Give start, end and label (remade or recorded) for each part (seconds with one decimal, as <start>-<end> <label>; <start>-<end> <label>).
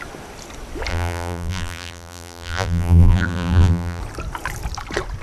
0.0-0.9 recorded; 0.9-4.0 remade; 4.0-5.2 recorded